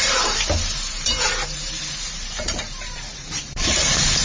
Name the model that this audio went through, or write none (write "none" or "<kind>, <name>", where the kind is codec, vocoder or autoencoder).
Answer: vocoder, BigVGAN v2